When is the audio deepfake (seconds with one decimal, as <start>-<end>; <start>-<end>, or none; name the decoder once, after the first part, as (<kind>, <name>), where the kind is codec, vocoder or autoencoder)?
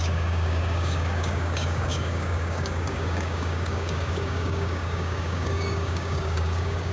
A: 0.0-6.9 (codec, DAC)